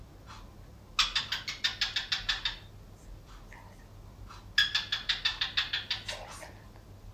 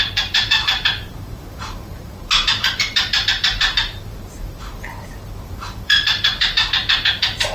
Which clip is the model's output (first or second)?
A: second